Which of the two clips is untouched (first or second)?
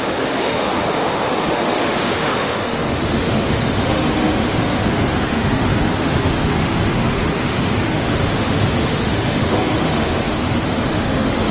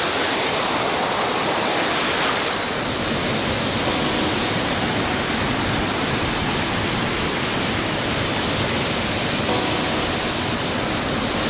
second